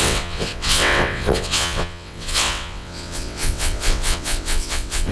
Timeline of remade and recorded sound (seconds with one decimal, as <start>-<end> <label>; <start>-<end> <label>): 0.0-5.1 remade